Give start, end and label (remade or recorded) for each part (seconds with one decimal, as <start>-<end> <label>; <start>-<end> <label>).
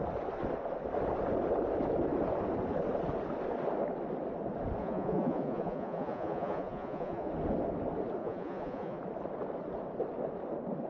0.0-4.8 recorded; 4.8-7.3 remade; 7.3-8.2 recorded; 8.2-9.0 remade; 9.0-10.9 recorded